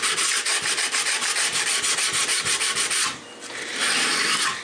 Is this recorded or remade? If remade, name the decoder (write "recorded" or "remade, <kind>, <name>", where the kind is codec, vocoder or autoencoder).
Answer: recorded